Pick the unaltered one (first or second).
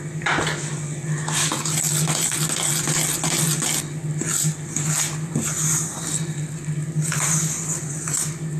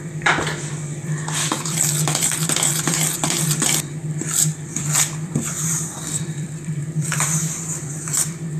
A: first